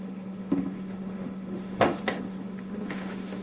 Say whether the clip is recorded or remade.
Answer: remade